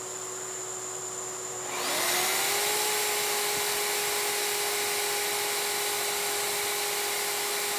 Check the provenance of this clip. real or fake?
real